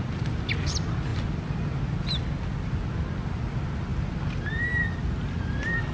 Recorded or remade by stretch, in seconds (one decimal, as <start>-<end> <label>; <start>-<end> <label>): 0.0-5.9 recorded